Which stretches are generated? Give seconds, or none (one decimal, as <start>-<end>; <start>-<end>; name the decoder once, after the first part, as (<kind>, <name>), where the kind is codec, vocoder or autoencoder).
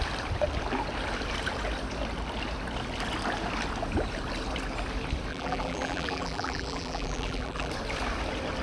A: 5.3-7.7 (vocoder, BigVGAN v2)